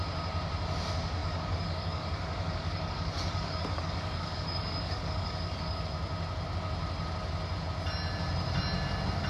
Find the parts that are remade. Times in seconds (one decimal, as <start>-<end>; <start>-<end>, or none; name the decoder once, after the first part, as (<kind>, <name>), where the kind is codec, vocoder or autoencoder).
1.2-5.8 (codec, DAC)